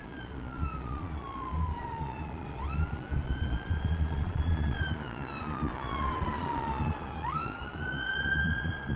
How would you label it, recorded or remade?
remade